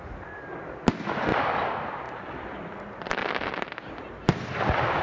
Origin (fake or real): real